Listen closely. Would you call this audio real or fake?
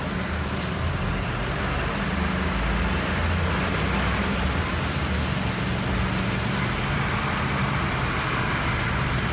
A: real